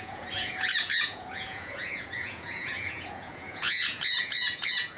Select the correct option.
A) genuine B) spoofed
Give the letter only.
B